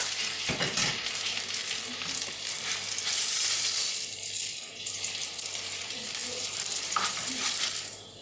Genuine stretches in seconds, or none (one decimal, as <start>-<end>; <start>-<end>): 1.6-4.7